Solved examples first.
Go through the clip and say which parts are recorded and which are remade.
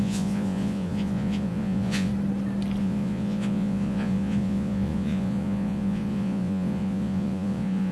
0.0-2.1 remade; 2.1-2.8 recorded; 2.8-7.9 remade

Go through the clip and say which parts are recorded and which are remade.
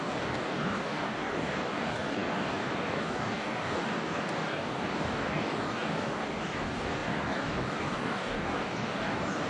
0.0-9.5 remade